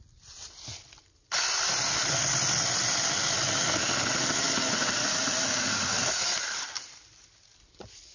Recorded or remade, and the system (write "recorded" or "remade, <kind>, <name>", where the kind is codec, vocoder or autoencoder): recorded